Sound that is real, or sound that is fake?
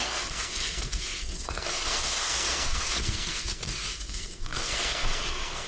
fake